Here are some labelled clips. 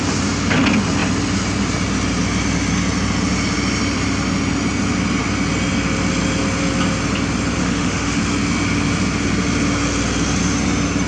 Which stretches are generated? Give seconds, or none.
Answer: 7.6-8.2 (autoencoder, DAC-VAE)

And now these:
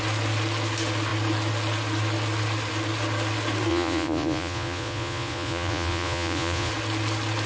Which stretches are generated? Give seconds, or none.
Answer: 3.7-6.7 (vocoder, Vocos)

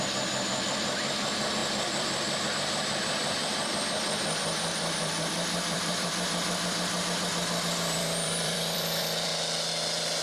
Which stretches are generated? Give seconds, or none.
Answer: 0.0-9.3 (vocoder, BigVGAN v2)

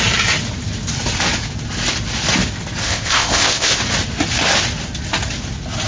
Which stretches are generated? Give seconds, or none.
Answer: 2.8-3.8 (codec, ZipCodec)

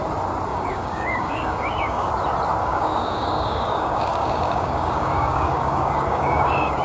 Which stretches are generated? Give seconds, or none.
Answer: 0.5-2.1 (codec, DAC); 2.6-6.8

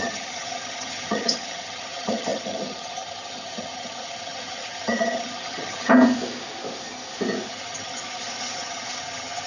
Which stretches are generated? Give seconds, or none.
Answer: 0.0-5.9 (vocoder, HiFi-GAN); 7.5-9.5

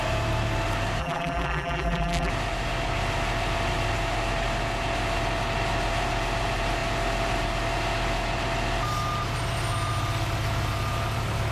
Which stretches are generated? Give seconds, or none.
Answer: 1.0-2.3 (vocoder, BigVGAN v2)